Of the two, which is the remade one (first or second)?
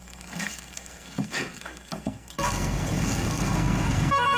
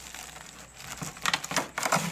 first